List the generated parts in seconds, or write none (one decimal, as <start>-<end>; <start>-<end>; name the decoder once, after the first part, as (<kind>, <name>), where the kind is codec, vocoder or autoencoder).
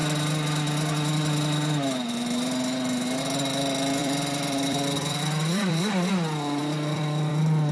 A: 4.0-6.1 (vocoder, BigVGAN v2); 6.6-7.3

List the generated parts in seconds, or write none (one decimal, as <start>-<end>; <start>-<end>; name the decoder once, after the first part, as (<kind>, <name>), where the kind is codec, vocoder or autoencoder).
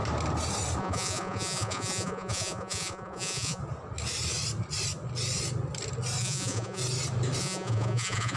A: 0.8-3.6 (vocoder, Vocos); 6.2-6.8; 7.4-8.4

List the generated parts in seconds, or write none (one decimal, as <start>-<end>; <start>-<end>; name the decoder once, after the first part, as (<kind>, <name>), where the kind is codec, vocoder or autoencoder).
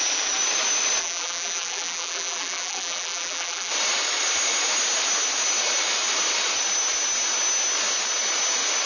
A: 1.0-3.7 (vocoder, BigVGAN v2)